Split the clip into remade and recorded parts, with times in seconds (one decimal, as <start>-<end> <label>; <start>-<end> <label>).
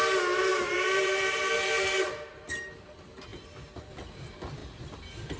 0.0-0.5 recorded; 0.5-2.1 remade; 2.1-5.4 recorded